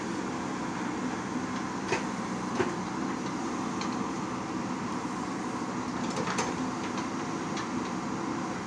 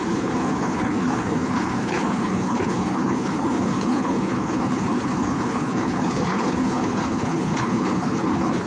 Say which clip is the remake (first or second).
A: second